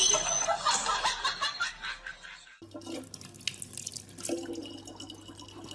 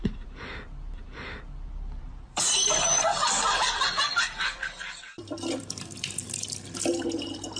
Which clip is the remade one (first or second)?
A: second